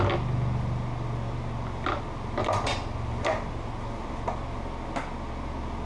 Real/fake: real